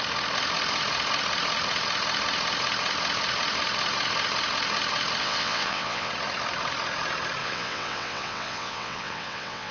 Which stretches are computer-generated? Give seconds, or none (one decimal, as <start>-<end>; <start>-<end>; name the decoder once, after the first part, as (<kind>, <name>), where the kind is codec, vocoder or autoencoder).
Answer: 5.2-6.1 (vocoder, WaveNeXt); 7.4-9.7